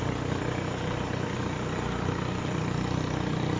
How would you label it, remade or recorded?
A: recorded